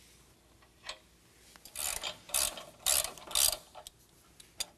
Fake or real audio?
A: real